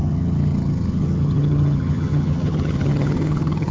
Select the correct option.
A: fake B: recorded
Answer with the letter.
A